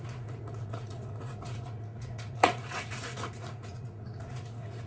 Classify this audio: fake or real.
fake